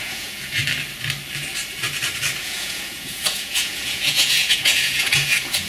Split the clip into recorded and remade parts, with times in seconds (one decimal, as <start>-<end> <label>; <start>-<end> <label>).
0.0-0.6 remade; 0.6-2.4 recorded; 2.4-5.7 remade

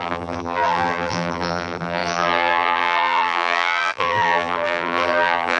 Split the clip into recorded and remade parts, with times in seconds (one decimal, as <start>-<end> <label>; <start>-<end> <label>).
0.0-5.6 remade